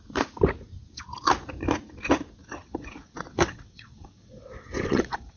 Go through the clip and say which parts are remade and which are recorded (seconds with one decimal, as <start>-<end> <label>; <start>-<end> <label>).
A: 0.0-2.4 recorded; 2.4-5.4 remade